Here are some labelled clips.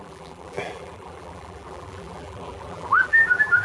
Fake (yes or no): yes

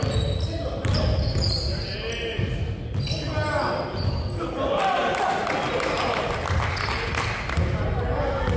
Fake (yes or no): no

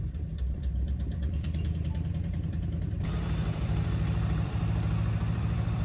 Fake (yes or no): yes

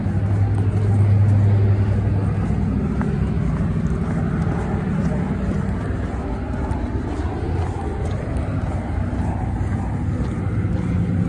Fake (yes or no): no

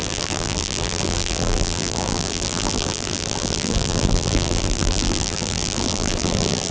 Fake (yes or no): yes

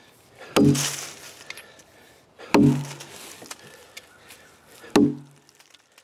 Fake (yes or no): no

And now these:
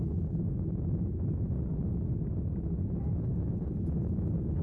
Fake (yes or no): no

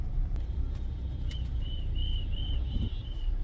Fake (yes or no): yes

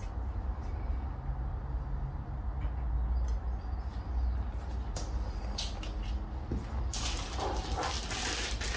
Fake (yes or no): no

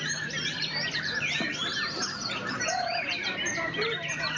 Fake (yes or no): yes